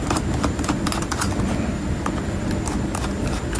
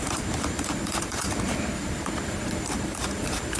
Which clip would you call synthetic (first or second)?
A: second